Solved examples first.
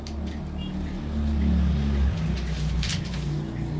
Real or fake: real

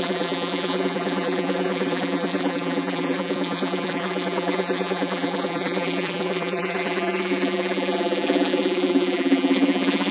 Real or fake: fake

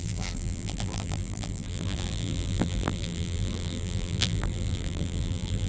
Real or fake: fake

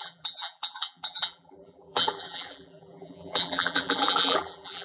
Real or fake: fake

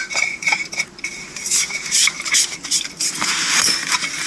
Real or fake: fake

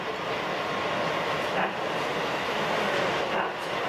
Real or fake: real